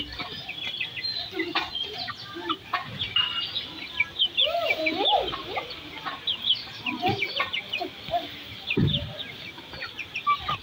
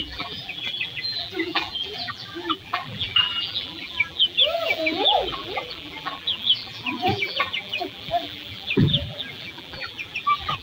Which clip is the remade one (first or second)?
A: second